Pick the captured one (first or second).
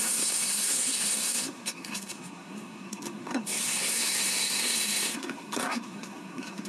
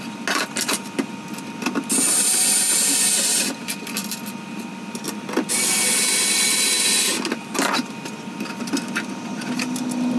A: second